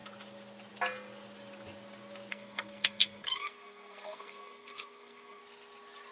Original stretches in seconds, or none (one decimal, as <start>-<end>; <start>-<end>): 0.0-2.3; 5.4-6.1